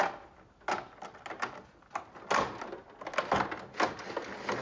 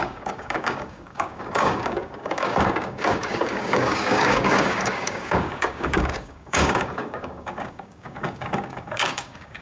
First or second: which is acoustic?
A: first